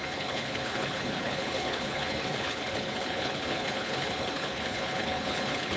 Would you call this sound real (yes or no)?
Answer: no